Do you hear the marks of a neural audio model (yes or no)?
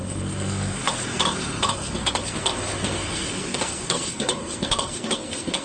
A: yes